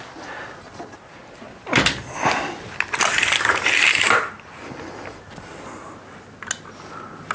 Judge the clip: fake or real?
real